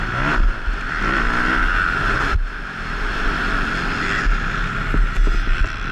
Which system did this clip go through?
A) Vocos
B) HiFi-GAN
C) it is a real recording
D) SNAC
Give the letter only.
C